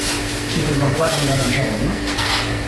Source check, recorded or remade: remade